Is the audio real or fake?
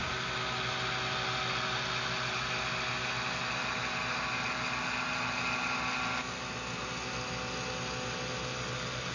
real